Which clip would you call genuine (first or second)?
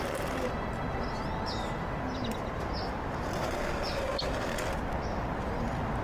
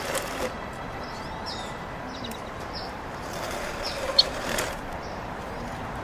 first